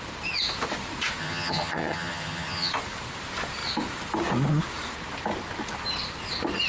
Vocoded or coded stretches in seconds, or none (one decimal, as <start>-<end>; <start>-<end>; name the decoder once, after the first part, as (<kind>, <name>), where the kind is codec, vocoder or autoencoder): 1.2-2.7 (vocoder, HiFi-GAN)